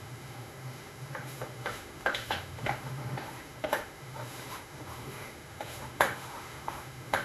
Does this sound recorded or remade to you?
remade